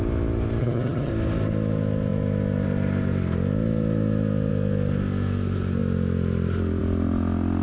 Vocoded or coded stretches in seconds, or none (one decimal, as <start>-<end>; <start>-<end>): 0.6-1.1